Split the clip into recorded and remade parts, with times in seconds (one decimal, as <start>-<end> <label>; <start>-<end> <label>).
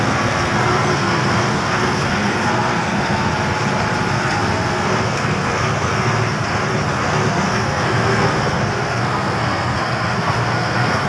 0.0-3.3 remade; 3.3-4.1 recorded; 4.1-6.4 remade; 6.4-6.9 recorded; 6.9-11.1 remade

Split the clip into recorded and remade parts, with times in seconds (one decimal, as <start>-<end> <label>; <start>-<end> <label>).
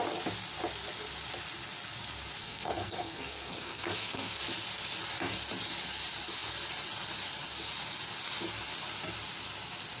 0.0-2.4 recorded; 2.4-4.4 remade; 4.4-10.0 recorded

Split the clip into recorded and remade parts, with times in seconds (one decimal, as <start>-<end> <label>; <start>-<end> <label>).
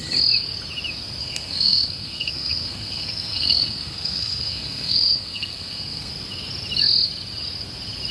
0.0-1.2 recorded; 1.2-6.1 remade; 6.1-8.1 recorded